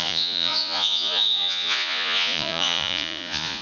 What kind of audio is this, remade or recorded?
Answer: remade